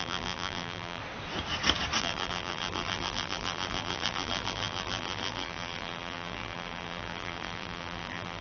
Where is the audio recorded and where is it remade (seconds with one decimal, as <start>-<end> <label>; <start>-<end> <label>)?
0.0-1.0 remade; 1.0-2.0 recorded; 2.0-8.4 remade